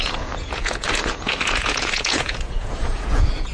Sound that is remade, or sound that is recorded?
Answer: remade